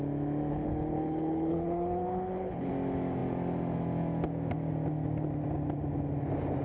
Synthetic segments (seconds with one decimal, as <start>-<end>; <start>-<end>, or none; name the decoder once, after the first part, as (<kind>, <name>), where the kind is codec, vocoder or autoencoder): 0.5-2.7 (codec, HILCodec)